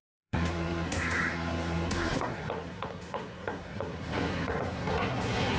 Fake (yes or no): yes